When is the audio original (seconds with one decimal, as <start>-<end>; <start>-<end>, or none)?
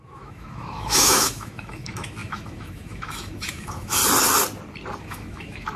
4.0-5.0